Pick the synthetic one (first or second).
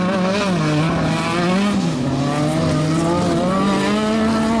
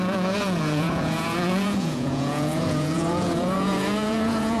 second